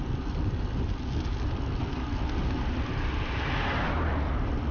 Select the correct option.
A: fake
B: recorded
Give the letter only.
B